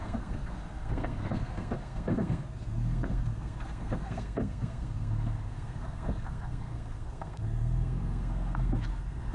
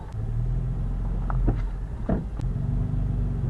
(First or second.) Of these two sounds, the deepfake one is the first